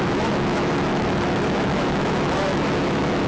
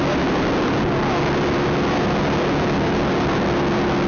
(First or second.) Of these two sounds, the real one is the second